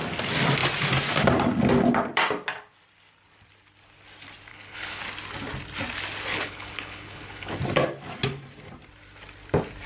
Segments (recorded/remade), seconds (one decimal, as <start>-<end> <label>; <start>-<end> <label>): 0.0-4.5 recorded; 4.5-5.0 remade; 5.0-6.3 recorded; 6.3-7.5 remade; 7.5-9.9 recorded

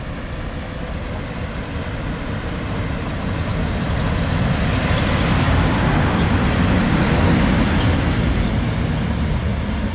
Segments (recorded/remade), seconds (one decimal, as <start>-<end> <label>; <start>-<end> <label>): 0.0-9.9 recorded